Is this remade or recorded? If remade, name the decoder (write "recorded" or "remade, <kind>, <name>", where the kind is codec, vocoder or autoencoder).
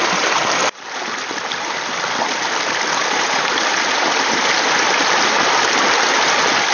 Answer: remade, vocoder, BigVGAN v2